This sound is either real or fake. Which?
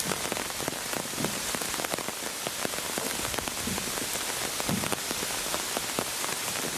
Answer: real